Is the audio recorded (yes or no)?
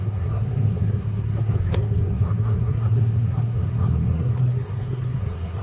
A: no